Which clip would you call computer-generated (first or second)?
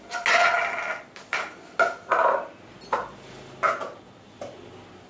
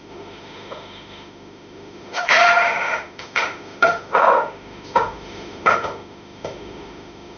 second